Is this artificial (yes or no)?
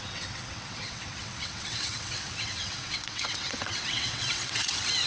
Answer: yes